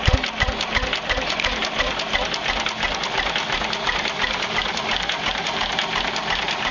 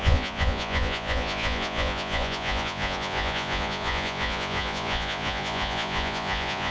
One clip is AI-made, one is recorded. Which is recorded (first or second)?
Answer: first